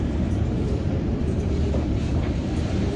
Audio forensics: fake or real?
fake